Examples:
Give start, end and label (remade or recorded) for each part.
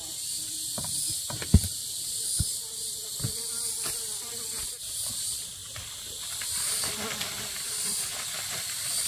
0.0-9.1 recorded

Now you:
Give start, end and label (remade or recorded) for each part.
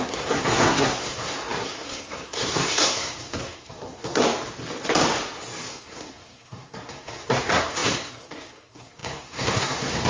0.0-4.2 remade; 4.2-5.7 recorded; 5.7-10.1 remade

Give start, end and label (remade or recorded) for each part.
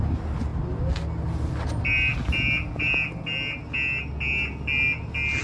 0.0-5.4 recorded